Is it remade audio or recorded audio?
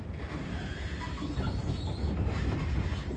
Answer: recorded